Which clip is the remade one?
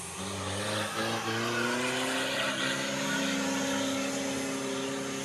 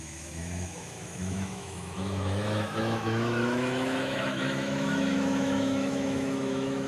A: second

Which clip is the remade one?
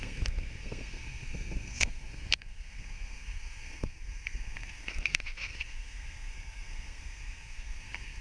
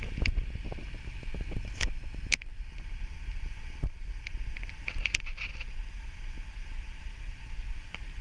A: first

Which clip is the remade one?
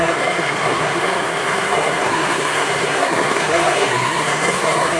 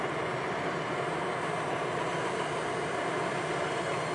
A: first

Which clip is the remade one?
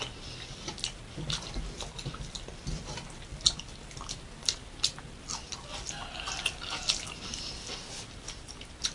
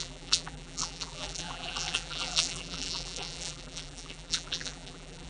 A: second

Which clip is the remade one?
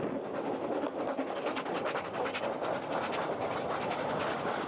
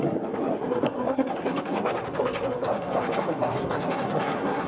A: second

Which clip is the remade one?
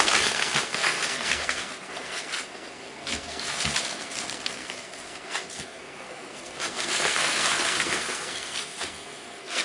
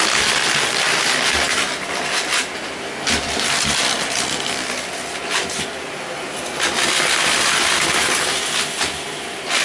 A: first